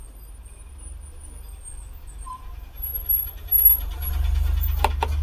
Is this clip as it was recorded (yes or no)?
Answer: yes